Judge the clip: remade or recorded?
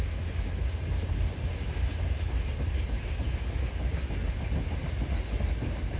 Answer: recorded